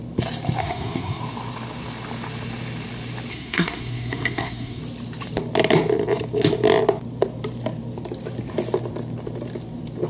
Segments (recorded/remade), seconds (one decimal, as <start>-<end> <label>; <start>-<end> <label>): 0.0-0.6 recorded; 0.6-1.2 remade; 1.2-3.3 recorded; 3.3-4.8 remade; 4.8-10.1 recorded